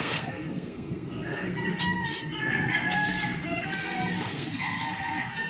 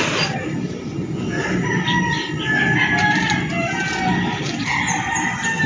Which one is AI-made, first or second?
first